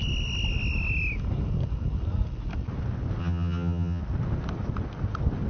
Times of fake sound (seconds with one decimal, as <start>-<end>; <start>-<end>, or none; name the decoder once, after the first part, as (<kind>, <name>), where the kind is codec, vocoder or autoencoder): 3.2-4.0 (vocoder, HiFi-GAN)